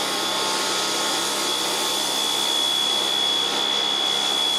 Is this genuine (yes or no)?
yes